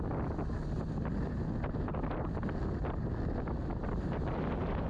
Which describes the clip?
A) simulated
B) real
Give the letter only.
B